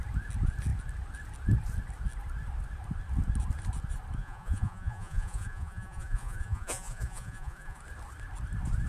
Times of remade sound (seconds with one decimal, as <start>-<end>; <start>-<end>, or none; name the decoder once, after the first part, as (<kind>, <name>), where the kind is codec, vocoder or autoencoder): 4.2-7.8 (vocoder, Vocos)